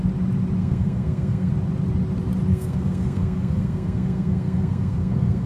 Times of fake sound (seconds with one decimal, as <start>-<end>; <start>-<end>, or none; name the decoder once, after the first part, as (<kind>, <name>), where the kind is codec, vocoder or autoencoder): 0.6-1.5 (codec, SNAC); 2.5-5.5